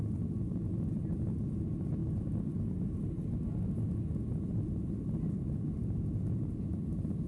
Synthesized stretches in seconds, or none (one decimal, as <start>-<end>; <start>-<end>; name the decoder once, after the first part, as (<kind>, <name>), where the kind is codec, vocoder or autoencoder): none